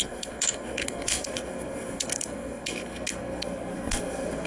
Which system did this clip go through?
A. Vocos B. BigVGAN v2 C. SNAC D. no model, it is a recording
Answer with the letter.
C